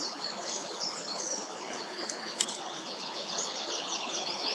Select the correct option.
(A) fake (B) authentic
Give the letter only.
A